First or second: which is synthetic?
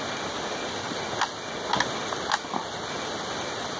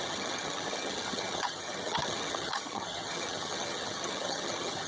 second